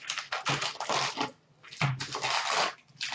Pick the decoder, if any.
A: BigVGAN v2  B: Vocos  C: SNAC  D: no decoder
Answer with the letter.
D